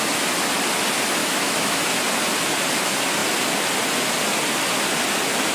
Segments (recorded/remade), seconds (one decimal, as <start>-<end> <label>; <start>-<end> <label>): 0.0-1.2 recorded; 1.2-1.8 remade; 1.8-5.5 recorded